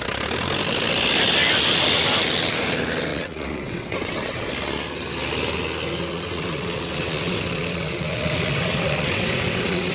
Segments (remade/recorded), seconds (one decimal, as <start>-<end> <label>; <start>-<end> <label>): 0.0-3.1 recorded; 3.1-4.5 remade; 4.5-6.1 recorded; 6.1-9.9 remade